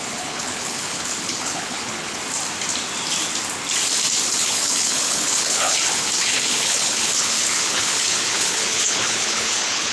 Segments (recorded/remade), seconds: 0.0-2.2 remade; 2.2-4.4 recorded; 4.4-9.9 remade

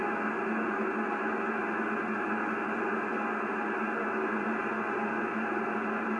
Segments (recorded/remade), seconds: 0.0-6.2 recorded

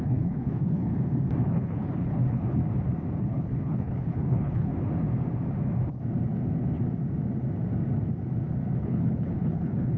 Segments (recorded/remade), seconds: 0.0-0.9 remade; 0.9-1.4 recorded; 1.4-2.6 remade; 2.6-3.2 recorded; 3.2-4.7 remade; 4.7-8.8 recorded; 8.8-10.0 remade